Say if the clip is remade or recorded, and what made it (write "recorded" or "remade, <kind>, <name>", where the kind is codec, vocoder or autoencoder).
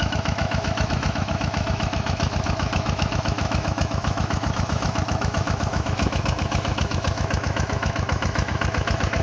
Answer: remade, autoencoder, DAC-VAE